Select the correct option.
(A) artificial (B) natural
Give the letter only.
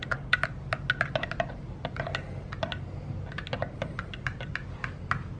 B